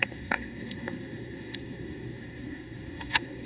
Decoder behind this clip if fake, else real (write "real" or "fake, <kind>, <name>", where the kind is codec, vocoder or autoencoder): fake, codec, SNAC